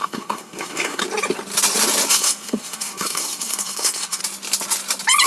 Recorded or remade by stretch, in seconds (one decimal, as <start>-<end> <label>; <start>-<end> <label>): 0.0-1.0 remade; 1.0-2.1 recorded; 2.1-4.2 remade; 4.2-5.3 recorded